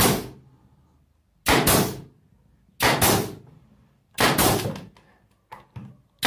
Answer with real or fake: real